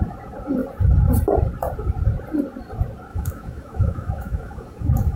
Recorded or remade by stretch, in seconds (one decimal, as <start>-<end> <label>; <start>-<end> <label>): 0.0-3.1 recorded; 3.1-5.2 remade